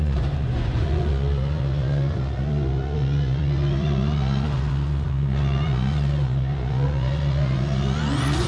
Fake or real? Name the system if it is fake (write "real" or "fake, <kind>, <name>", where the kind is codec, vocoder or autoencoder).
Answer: fake, vocoder, Vocos